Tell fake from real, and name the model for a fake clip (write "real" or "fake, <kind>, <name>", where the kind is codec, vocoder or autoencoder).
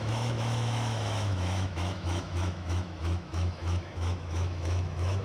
fake, autoencoder, DAC-VAE